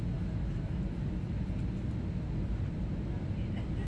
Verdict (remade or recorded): recorded